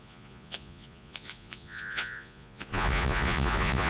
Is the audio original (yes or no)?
no